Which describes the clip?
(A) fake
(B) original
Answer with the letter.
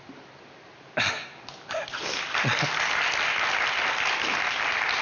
B